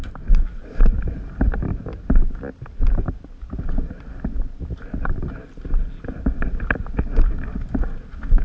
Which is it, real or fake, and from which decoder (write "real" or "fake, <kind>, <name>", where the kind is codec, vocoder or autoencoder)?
real